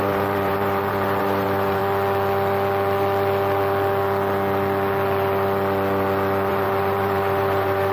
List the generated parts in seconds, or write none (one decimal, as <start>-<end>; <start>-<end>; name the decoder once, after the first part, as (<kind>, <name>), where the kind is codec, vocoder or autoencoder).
0.0-1.8 (vocoder, BigVGAN v2); 6.5-7.9